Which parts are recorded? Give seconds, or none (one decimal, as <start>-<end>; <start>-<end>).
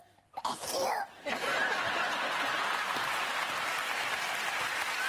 0.0-5.1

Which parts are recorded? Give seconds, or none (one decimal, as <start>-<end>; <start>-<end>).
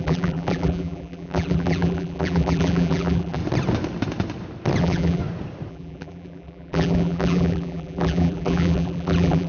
3.4-4.8; 5.2-5.7